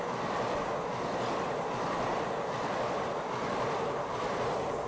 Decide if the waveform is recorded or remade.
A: recorded